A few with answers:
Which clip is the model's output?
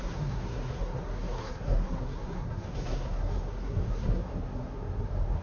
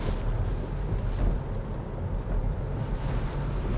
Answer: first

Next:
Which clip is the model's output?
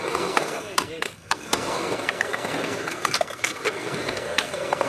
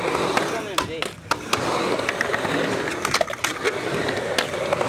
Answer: first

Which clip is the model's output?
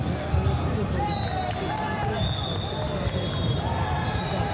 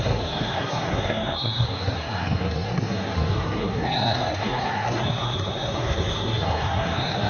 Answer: second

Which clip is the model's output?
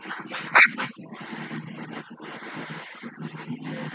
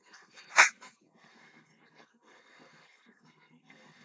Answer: second